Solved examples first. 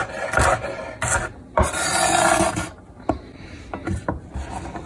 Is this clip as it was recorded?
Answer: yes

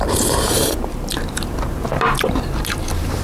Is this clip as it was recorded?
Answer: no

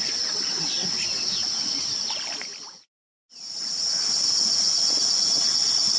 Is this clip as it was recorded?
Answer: yes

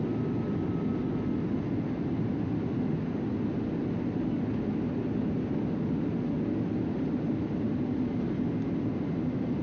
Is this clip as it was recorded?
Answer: yes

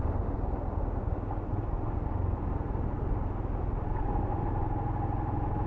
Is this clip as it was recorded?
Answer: yes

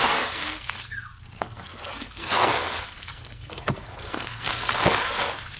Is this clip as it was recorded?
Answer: no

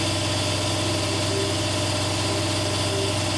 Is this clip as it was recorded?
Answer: yes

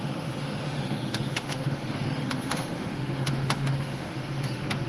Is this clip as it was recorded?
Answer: no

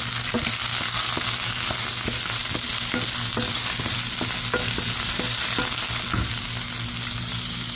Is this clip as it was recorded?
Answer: yes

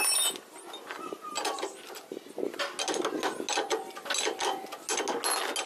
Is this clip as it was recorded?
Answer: yes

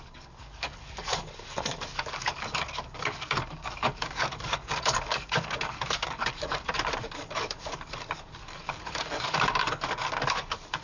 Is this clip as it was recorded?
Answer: no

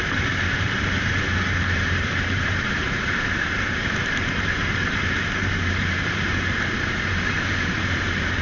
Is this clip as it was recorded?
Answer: no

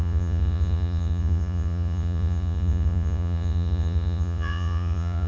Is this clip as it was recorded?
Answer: no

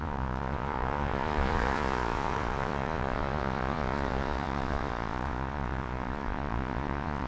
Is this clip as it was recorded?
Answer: no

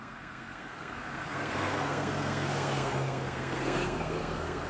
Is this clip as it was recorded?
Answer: no